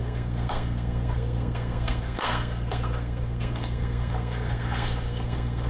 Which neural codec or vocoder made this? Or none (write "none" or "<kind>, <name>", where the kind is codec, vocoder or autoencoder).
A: codec, SNAC